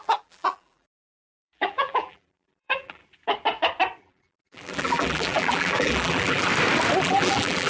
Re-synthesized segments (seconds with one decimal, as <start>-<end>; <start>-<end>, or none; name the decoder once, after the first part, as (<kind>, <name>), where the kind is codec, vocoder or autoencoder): 0.0-3.0 (vocoder, BigVGAN v2); 4.0-6.5; 7.0-7.7